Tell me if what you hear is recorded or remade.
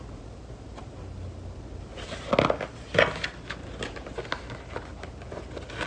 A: recorded